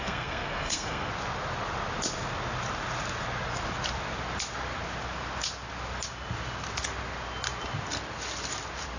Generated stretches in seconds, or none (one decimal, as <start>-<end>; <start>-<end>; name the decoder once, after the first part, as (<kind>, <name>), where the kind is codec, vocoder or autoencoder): 0.0-1.1 (codec, SNAC)